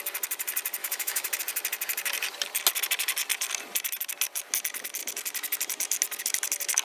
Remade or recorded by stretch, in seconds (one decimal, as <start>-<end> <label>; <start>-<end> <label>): 0.0-0.8 recorded; 0.8-1.4 remade; 1.4-6.8 recorded

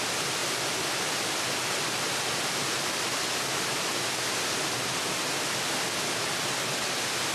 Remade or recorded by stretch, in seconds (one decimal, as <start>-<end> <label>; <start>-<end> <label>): 0.0-7.3 recorded

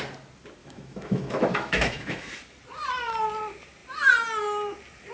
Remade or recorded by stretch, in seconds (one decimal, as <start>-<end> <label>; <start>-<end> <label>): 0.0-0.6 recorded; 0.6-2.3 remade; 2.3-5.1 recorded

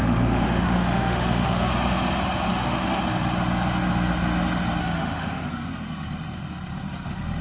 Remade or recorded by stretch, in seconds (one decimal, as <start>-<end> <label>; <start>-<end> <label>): 0.0-1.7 remade; 1.7-2.5 recorded; 2.5-3.0 remade; 3.0-4.8 recorded; 4.8-5.5 remade; 5.5-7.4 recorded

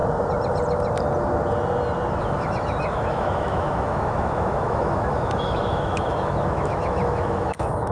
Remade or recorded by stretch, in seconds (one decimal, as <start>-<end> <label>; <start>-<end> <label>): 0.0-2.2 recorded; 2.2-7.9 remade

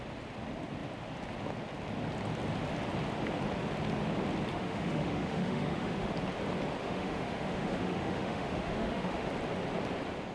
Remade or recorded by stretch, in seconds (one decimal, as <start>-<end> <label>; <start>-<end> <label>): 0.0-4.5 recorded; 4.5-6.1 remade; 6.1-6.8 recorded; 6.8-9.3 remade; 9.3-10.3 recorded

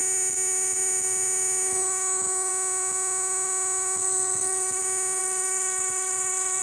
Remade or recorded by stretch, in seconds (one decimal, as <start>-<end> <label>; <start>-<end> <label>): 0.0-4.0 recorded; 4.0-4.8 remade; 4.8-5.2 recorded; 5.2-6.6 remade